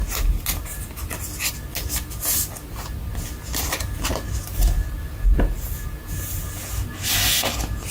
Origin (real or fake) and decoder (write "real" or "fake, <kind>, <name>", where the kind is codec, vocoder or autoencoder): real